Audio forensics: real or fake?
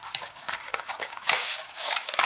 fake